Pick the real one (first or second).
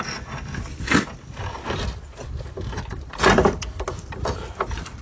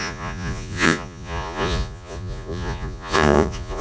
first